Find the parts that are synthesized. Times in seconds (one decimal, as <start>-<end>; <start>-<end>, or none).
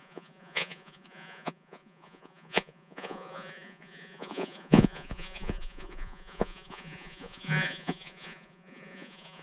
0.0-9.4